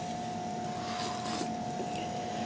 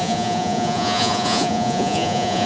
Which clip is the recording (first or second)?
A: first